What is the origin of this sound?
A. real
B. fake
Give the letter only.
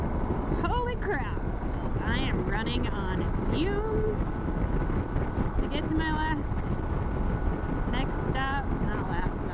A